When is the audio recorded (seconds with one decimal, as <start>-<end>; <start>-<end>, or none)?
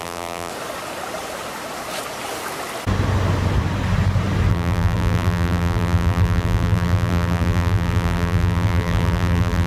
0.5-4.5